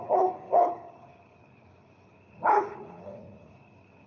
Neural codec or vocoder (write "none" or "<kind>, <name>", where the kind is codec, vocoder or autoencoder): codec, HILCodec